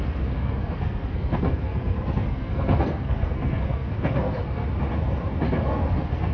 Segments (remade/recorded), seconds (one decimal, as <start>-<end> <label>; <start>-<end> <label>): 0.0-4.6 remade; 4.6-5.7 recorded; 5.7-6.3 remade